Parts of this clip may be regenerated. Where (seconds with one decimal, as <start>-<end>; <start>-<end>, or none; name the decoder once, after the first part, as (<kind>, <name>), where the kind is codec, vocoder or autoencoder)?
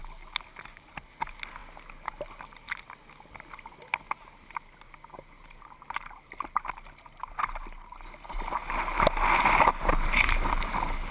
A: none